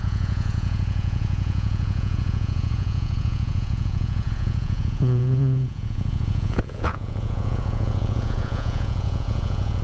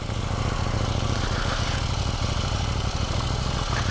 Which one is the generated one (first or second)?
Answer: first